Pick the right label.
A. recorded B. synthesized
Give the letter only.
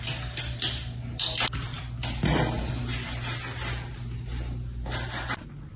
A